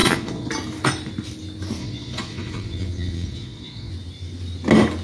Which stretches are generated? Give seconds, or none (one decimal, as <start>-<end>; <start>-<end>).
0.0-0.5; 1.8-3.9